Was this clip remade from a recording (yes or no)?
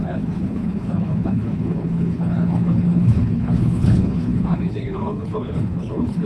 yes